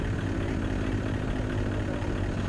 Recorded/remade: recorded